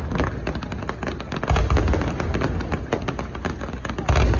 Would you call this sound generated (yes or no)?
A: no